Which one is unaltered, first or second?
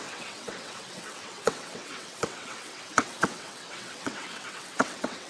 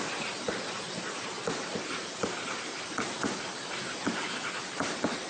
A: second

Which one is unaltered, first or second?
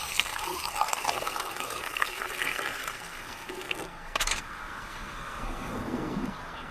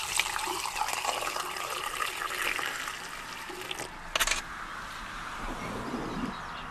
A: second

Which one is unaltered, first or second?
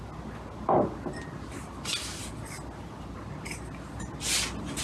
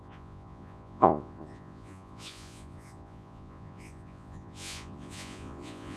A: first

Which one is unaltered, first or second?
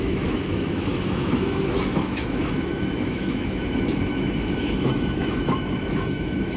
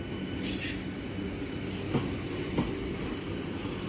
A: second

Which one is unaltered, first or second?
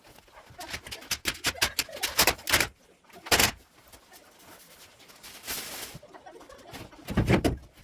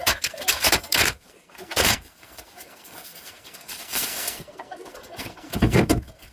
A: first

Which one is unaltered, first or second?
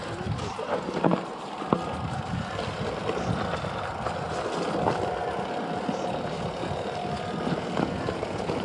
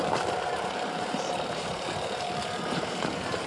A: first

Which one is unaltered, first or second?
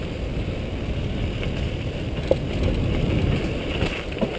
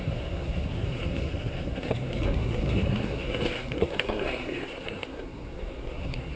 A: first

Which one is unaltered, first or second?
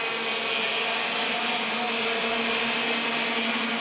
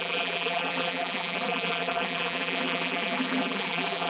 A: first